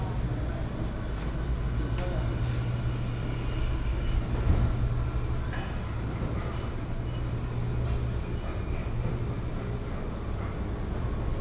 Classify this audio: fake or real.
real